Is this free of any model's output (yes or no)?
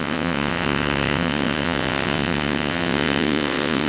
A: no